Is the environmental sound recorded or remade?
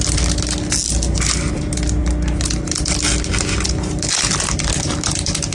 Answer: recorded